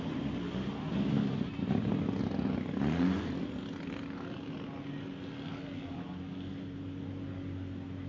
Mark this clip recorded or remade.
recorded